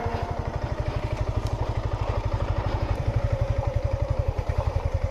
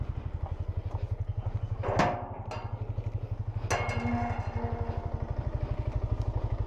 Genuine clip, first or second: second